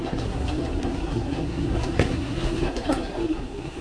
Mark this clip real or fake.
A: fake